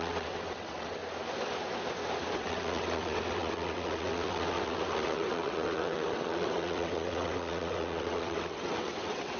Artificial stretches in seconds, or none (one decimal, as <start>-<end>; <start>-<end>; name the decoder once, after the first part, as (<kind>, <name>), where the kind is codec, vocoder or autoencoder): 0.0-1.0 (vocoder, WaveNeXt); 2.3-9.4